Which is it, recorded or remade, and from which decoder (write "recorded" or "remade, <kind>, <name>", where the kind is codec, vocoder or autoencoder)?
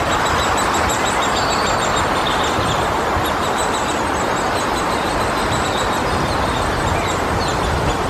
recorded